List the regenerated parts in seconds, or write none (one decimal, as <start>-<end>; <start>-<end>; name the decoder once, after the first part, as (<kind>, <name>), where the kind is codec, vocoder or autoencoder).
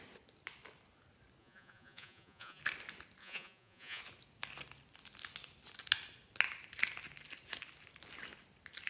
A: 1.4-2.6 (vocoder, Vocos); 3.2-4.0